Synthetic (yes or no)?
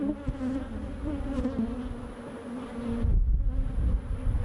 no